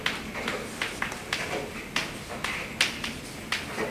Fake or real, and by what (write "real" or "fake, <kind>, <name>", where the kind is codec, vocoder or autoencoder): real